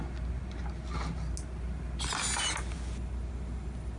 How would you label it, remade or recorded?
recorded